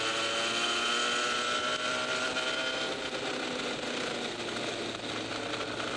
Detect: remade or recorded recorded